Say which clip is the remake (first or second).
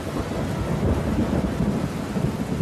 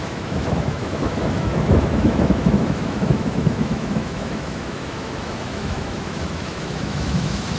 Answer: second